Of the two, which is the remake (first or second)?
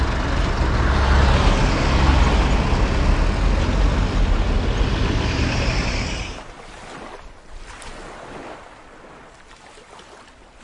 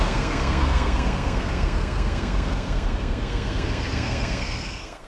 second